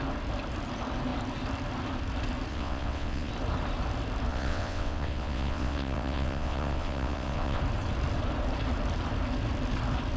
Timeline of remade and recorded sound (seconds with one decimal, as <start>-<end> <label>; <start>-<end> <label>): 0.0-2.5 recorded; 2.5-3.3 remade; 3.3-4.3 recorded; 4.3-7.6 remade; 7.6-10.2 recorded